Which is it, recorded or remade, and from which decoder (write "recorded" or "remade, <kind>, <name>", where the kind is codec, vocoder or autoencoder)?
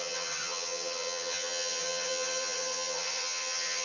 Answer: remade, vocoder, HiFi-GAN